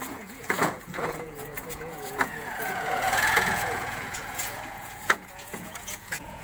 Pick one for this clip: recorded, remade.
remade